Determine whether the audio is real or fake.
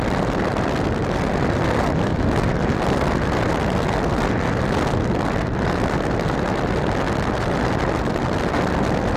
real